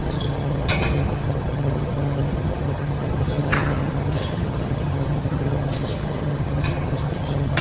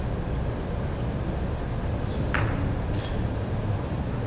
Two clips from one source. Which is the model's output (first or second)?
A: first